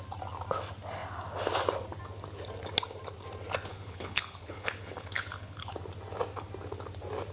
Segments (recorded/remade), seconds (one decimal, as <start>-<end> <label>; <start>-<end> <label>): 0.0-3.7 recorded; 3.7-5.7 remade; 5.7-7.3 recorded